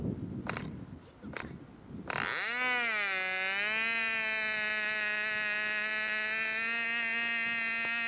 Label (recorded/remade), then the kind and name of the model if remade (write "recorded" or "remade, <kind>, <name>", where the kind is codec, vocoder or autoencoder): recorded